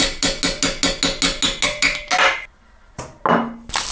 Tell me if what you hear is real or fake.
real